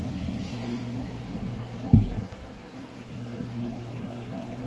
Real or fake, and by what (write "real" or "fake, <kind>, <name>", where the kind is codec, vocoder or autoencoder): fake, codec, SNAC